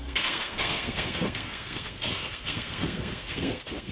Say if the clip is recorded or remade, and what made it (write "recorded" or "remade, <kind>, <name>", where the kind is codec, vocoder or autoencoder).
remade, codec, SNAC